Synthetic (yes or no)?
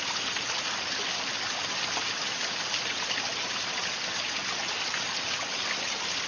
no